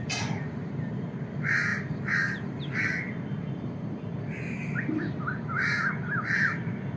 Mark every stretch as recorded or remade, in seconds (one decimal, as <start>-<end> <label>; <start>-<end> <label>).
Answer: 0.0-7.0 recorded